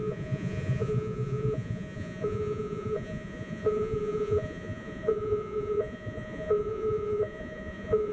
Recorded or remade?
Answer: remade